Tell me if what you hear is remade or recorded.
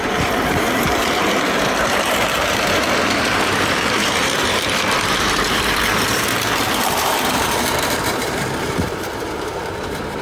remade